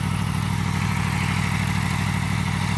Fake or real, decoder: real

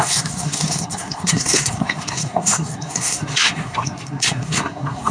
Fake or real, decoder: fake, codec, SNAC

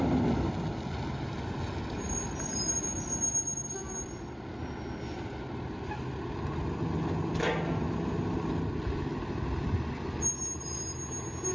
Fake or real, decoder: real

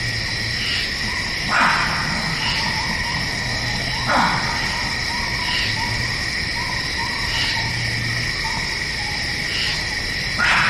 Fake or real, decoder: real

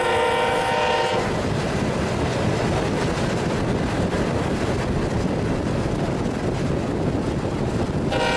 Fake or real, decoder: real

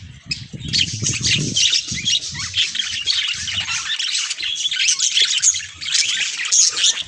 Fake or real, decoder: real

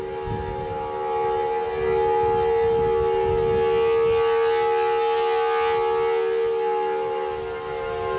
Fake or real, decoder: real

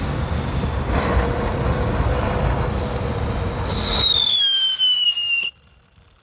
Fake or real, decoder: real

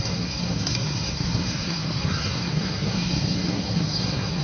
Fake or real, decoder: fake, codec, SNAC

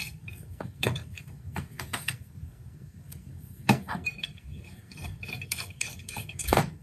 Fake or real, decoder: fake, codec, SNAC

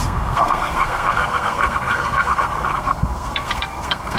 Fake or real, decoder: fake, codec, SNAC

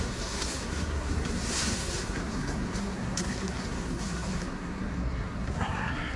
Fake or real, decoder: fake, codec, SNAC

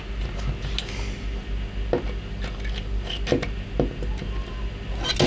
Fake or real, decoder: real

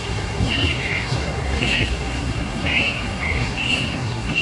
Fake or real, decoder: fake, codec, SNAC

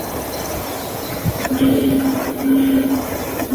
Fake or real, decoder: real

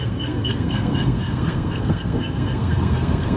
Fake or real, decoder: fake, codec, SNAC